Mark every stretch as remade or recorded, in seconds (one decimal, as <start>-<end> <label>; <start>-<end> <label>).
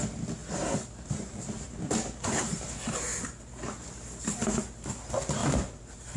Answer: 0.0-0.4 recorded; 0.4-2.6 remade; 2.6-5.4 recorded; 5.4-6.2 remade